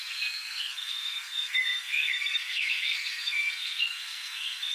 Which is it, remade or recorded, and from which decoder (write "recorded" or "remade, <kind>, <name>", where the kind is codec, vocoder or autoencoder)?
remade, codec, SNAC